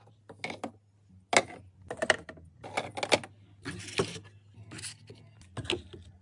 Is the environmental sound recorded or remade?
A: recorded